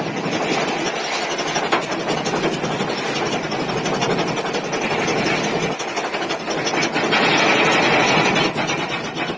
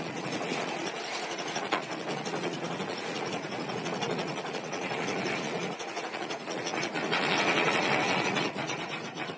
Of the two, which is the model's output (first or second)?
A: second